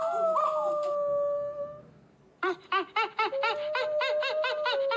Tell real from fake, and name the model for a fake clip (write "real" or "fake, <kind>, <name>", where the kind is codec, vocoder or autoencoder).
real